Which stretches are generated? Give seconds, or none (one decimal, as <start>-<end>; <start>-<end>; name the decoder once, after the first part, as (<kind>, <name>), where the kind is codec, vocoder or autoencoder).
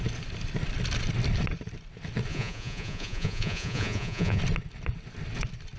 2.3-4.4 (vocoder, Vocos)